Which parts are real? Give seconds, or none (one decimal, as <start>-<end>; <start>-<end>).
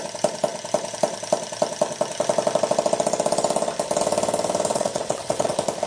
0.0-4.7; 5.5-5.9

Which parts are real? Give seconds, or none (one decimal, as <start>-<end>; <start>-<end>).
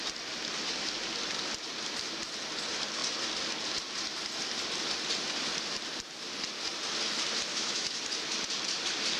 0.0-7.5; 8.0-9.2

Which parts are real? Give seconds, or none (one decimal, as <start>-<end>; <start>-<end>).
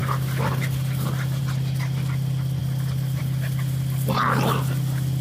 0.0-5.2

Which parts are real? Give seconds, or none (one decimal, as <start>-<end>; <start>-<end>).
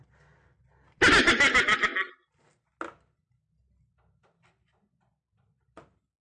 0.0-6.2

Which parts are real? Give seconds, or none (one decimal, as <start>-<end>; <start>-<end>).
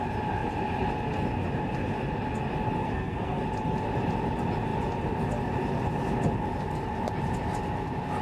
0.0-2.8; 3.4-8.2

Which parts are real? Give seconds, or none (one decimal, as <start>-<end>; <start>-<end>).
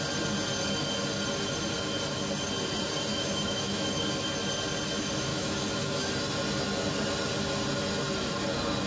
0.0-3.1; 4.0-5.3; 6.1-8.9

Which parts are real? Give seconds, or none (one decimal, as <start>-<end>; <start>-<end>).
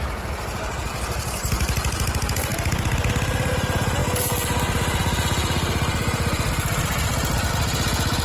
0.0-8.2